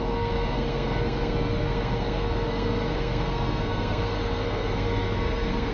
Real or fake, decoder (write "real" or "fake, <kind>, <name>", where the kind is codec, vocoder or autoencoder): fake, codec, SNAC